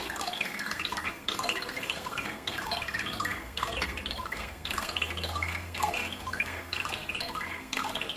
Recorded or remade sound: remade